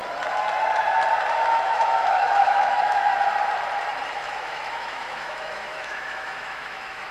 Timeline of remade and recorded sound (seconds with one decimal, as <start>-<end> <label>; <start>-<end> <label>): 0.0-1.3 recorded; 1.3-3.1 remade; 3.1-4.1 recorded; 4.1-7.1 remade